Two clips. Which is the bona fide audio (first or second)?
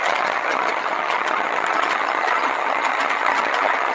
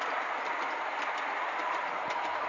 second